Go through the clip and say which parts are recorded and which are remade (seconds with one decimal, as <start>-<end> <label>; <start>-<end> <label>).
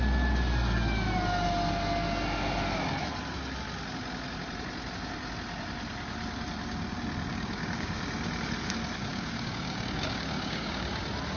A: 0.0-7.3 recorded; 7.3-8.0 remade; 8.0-9.1 recorded; 9.1-11.0 remade; 11.0-11.4 recorded